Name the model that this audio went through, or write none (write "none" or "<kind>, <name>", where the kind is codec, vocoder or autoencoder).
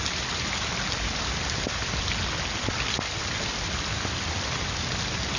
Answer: none